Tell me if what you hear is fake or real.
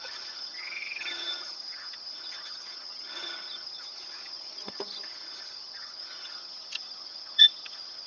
fake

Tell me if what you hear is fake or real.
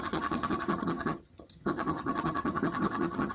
fake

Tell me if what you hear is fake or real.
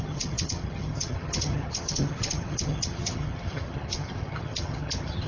fake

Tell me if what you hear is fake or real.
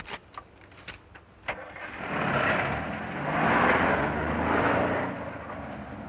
real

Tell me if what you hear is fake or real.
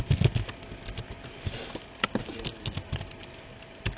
real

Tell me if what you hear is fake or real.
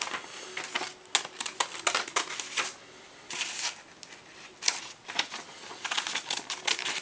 real